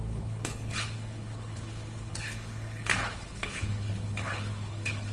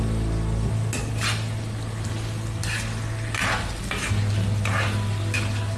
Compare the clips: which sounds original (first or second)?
second